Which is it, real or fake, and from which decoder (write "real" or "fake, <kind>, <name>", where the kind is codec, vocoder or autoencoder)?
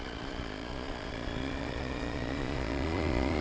fake, vocoder, Vocos